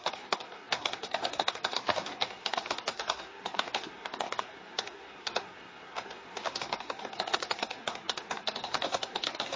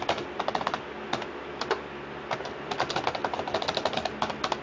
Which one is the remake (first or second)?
first